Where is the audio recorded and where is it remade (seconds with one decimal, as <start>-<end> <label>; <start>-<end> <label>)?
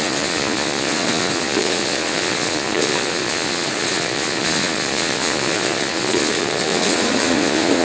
0.0-7.8 remade